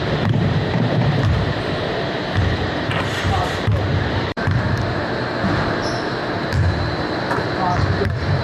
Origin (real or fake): fake